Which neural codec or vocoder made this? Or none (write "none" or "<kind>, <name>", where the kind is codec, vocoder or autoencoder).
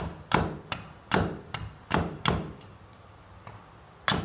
none